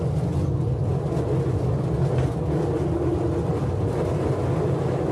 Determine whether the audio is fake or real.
real